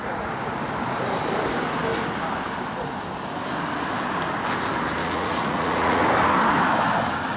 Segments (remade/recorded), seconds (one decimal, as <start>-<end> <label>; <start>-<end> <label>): 0.0-5.0 recorded; 5.0-6.0 remade; 6.0-7.4 recorded